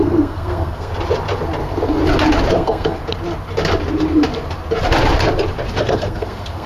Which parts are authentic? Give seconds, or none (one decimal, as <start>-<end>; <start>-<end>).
0.9-1.6; 2.0-2.5; 3.0-5.8